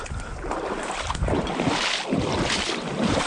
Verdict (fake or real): real